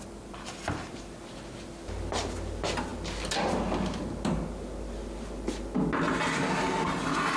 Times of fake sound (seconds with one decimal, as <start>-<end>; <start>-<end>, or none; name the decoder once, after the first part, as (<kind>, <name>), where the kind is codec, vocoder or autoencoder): none